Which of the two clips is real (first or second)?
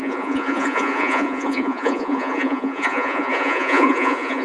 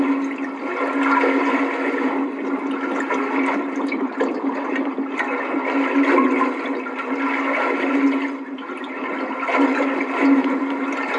second